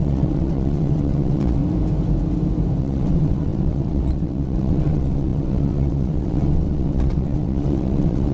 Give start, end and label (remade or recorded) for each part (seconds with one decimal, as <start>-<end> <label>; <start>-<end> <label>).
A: 0.0-1.6 remade; 1.6-2.8 recorded; 2.8-8.3 remade